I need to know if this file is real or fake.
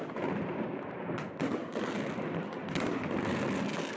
real